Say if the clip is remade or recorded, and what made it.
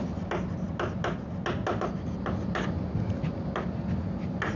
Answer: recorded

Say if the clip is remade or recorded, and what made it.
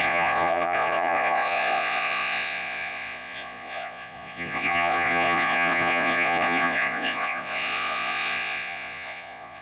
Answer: remade, vocoder, Vocos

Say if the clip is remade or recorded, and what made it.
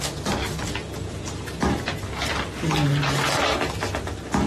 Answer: recorded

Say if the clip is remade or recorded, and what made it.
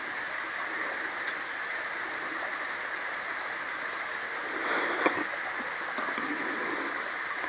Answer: recorded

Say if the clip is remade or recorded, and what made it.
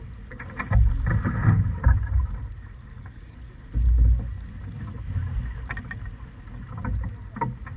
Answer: recorded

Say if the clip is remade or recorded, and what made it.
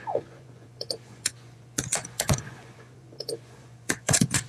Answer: remade, vocoder, Vocos